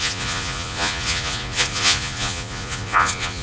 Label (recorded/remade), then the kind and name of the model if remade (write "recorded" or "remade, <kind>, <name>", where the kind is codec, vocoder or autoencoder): remade, vocoder, Vocos